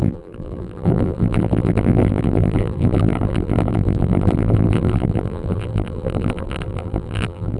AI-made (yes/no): yes